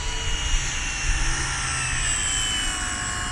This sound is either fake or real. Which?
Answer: real